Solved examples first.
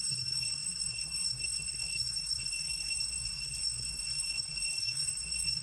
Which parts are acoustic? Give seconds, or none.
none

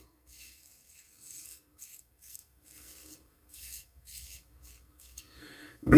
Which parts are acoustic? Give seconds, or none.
none